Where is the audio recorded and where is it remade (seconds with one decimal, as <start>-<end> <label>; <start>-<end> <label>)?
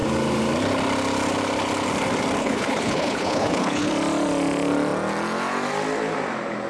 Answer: 0.0-2.4 recorded; 2.4-3.9 remade; 3.9-6.7 recorded